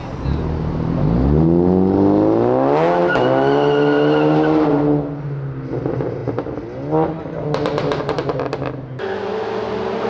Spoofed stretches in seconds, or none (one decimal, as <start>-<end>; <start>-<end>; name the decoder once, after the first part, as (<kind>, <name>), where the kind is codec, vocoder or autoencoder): none